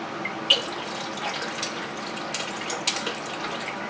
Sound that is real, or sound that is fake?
real